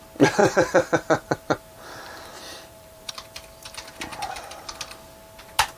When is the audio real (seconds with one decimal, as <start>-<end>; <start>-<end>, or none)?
0.0-0.4; 3.1-5.8